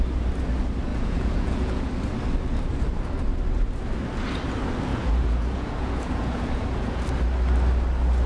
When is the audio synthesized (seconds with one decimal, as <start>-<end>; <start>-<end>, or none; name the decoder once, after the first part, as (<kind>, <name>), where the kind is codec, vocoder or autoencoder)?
0.9-1.9 (vocoder, Vocos); 4.9-7.0